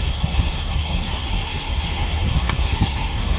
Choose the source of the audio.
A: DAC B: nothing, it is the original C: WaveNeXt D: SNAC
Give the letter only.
D